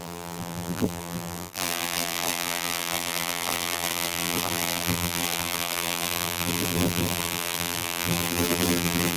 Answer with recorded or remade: remade